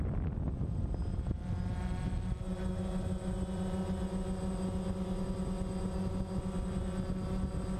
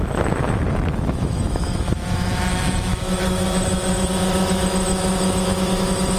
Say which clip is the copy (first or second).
second